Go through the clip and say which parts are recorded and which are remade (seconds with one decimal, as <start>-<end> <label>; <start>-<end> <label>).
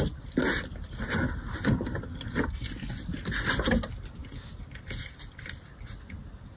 0.0-6.6 recorded